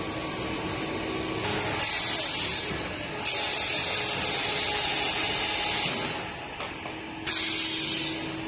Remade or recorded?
recorded